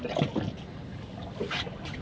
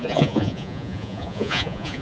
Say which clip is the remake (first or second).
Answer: second